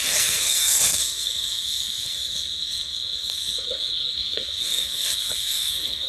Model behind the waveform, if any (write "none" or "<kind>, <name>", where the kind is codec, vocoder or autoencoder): codec, SNAC